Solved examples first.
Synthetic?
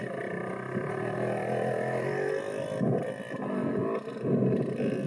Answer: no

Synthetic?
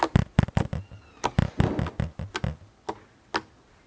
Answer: no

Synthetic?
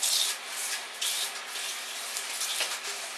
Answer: no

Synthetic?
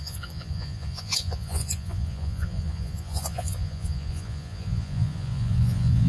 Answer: yes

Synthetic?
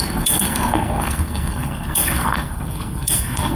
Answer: yes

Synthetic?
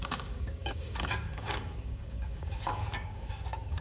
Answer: yes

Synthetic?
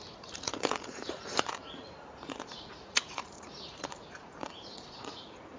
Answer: yes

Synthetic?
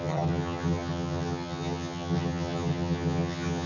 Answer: yes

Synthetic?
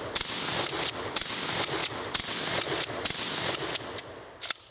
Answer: no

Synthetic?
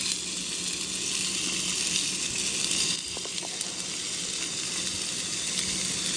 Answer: no